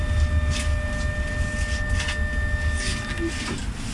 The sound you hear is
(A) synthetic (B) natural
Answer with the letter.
B